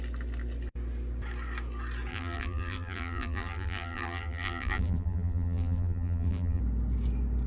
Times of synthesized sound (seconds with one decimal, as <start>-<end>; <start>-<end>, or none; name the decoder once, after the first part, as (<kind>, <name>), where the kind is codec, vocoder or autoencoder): 2.1-6.6 (vocoder, BigVGAN v2)